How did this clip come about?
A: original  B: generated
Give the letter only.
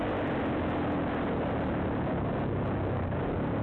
A